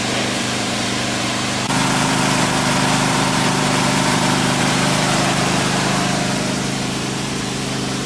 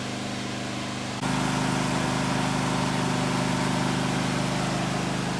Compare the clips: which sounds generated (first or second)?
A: first